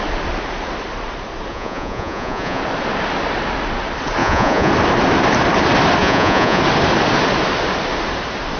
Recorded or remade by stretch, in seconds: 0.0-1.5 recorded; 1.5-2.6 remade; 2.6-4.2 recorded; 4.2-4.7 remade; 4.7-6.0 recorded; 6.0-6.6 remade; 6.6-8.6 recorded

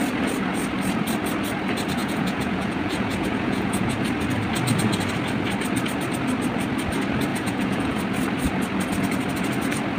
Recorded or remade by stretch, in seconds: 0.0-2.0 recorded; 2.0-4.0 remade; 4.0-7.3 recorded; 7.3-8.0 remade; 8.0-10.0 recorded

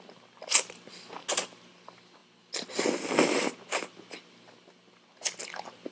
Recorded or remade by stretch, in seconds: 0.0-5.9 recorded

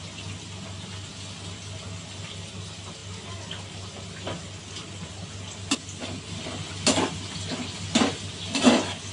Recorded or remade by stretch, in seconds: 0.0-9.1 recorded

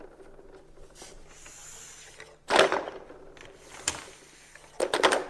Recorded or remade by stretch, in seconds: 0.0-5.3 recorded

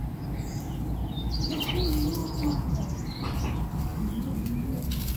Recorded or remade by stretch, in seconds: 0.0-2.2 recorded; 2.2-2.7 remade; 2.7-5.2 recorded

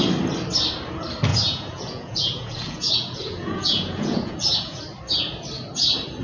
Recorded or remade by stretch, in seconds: 0.0-1.3 recorded; 1.3-4.8 remade; 4.8-6.2 recorded